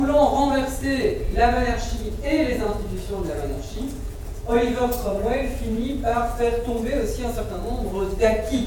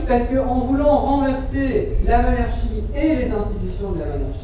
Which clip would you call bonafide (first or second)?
second